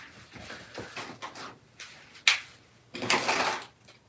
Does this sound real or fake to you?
real